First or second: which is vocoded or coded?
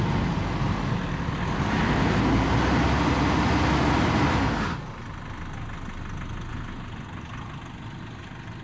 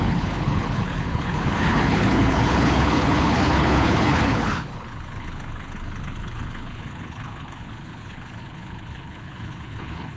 second